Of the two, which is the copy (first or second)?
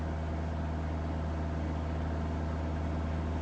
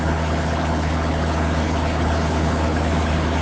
second